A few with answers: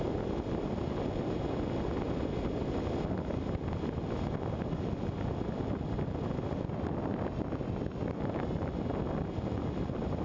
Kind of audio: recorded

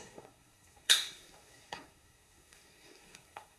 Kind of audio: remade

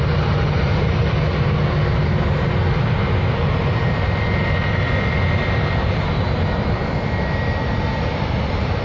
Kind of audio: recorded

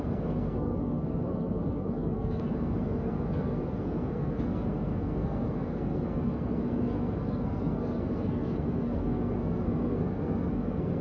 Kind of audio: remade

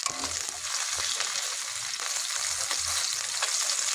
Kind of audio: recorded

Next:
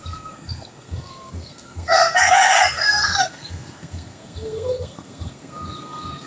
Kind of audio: remade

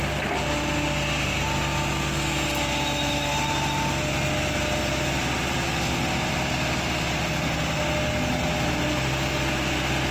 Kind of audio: recorded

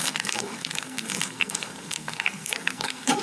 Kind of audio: remade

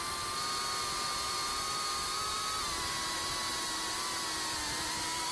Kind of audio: recorded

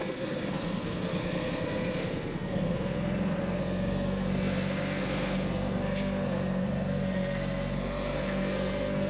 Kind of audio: remade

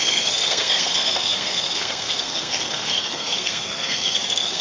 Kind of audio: remade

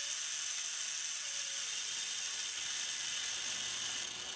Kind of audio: recorded